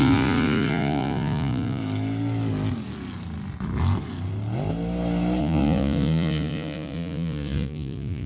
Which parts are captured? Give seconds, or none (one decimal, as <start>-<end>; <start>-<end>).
1.8-5.4